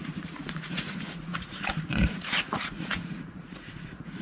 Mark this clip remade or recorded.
remade